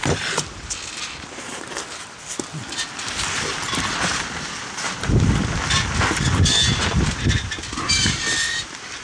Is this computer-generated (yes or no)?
no